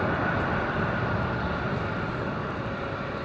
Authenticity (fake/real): real